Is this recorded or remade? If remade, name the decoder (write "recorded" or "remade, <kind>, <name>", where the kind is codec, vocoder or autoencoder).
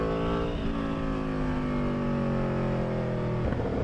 recorded